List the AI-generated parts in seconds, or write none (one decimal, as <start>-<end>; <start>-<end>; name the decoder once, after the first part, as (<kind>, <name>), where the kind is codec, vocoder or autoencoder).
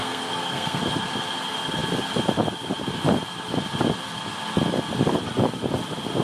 0.0-0.8 (codec, SNAC)